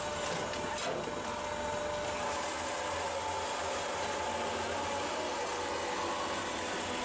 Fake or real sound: real